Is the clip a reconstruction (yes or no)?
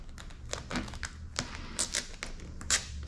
no